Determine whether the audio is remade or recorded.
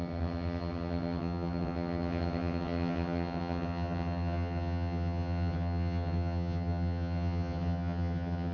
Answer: remade